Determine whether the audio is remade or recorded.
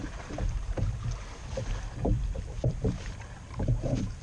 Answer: remade